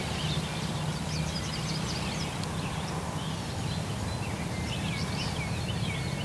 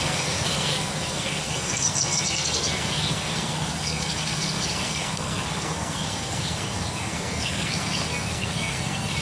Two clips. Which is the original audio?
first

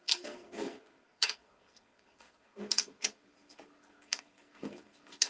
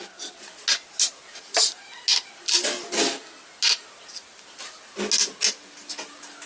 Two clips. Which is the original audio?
second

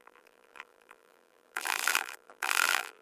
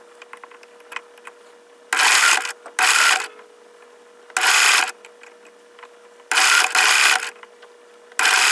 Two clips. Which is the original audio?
second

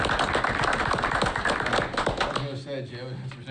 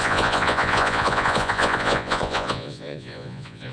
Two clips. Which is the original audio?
first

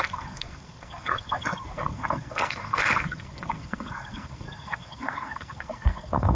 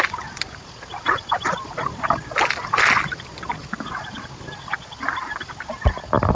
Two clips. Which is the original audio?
second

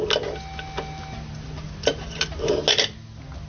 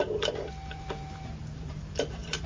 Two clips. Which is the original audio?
first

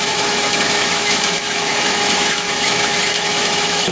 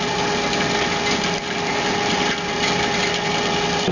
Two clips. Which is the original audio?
second